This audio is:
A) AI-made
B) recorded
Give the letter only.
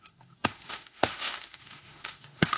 A